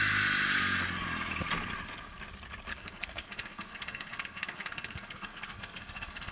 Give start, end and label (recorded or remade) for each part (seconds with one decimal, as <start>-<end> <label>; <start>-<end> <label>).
0.0-2.7 recorded; 2.7-6.3 remade